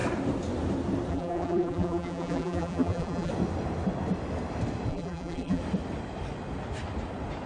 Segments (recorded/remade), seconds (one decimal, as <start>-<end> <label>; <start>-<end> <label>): 0.0-1.1 recorded; 1.1-3.3 remade; 3.3-4.9 recorded; 4.9-5.6 remade; 5.6-7.5 recorded